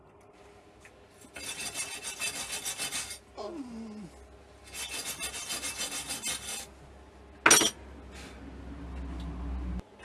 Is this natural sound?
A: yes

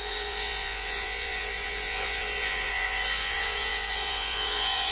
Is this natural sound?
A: no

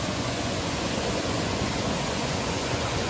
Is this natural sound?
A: no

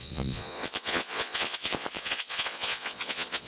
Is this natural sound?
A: no